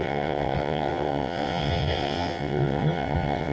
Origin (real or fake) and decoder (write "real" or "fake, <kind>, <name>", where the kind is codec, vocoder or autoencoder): fake, vocoder, WaveNeXt